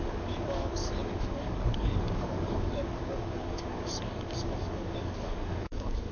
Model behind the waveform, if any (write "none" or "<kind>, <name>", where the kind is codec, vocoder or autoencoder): codec, DAC